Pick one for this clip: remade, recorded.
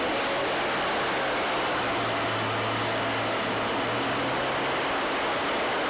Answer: recorded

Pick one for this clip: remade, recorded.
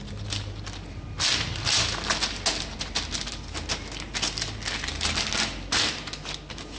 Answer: recorded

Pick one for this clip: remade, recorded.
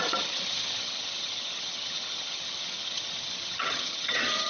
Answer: remade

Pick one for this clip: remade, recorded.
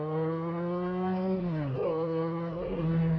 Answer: remade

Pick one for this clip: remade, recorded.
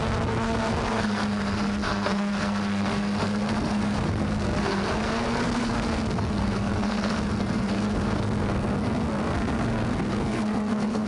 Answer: remade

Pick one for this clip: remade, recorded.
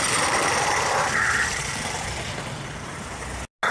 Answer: recorded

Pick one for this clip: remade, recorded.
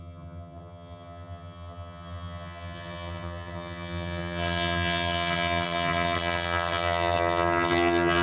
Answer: remade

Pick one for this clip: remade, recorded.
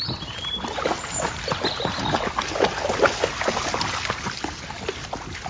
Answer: recorded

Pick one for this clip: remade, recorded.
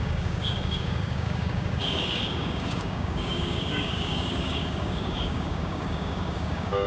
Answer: remade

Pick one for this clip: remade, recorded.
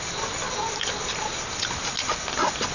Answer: recorded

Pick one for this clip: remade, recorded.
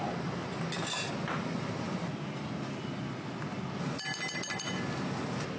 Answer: recorded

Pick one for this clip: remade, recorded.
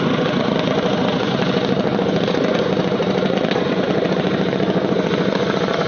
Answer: remade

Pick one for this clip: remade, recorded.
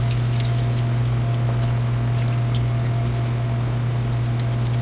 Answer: recorded